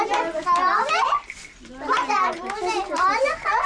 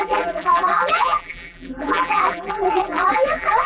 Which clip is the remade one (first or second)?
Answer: second